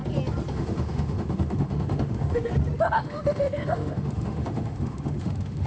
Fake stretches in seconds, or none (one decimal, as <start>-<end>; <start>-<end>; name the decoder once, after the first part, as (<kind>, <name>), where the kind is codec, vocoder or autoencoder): 0.5-2.5 (autoencoder, DAC-VAE); 3.0-5.7